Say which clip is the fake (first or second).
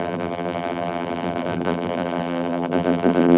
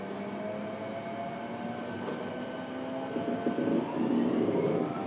first